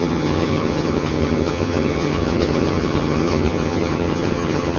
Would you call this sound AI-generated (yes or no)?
yes